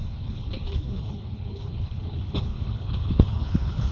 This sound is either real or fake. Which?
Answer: fake